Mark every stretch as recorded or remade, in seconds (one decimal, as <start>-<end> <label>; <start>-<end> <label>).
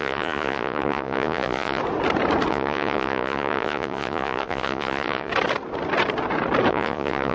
0.0-1.8 remade; 1.8-2.5 recorded; 2.5-5.3 remade; 5.3-6.7 recorded; 6.7-7.3 remade